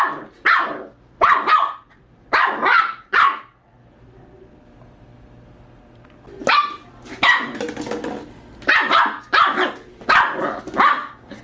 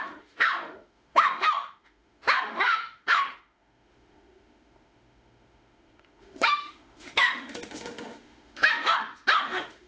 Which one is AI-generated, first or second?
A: second